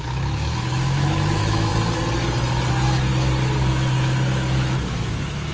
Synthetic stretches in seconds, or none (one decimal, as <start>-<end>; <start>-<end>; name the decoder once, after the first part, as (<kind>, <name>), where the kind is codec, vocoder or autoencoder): 0.0-1.7 (autoencoder, DAC-VAE); 2.7-3.1; 3.7-5.5